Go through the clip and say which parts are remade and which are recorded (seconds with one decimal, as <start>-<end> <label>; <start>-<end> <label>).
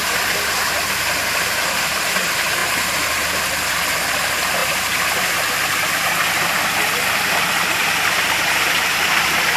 0.0-2.6 remade; 2.6-3.8 recorded; 3.8-9.6 remade